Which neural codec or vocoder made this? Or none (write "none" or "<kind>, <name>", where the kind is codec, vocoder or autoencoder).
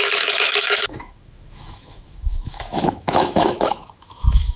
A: autoencoder, DAC-VAE